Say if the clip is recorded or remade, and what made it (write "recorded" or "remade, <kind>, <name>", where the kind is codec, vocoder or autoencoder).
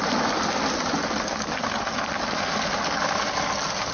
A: recorded